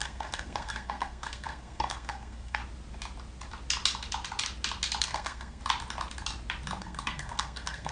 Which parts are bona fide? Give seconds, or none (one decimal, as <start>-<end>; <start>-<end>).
2.6-5.0; 5.6-6.8